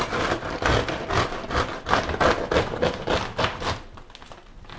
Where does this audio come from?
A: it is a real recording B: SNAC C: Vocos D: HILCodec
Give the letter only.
A